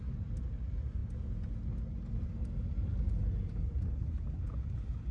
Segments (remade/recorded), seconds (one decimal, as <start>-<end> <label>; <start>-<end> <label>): 0.0-5.1 recorded